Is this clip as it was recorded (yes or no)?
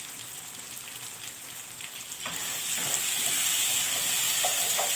yes